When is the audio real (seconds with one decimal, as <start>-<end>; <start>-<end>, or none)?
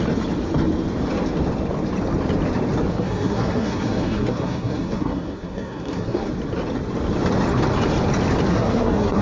0.0-2.9; 6.3-8.5